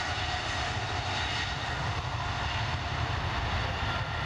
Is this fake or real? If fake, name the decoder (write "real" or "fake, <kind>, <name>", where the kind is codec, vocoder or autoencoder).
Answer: real